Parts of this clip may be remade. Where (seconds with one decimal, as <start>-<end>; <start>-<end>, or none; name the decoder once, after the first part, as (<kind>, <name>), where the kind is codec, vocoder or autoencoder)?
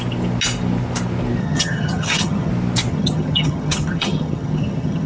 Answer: 1.4-2.5 (vocoder, HiFi-GAN); 2.9-5.1